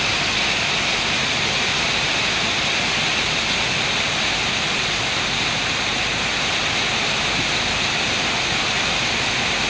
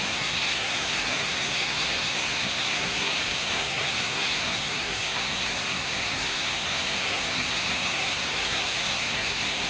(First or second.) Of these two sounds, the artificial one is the second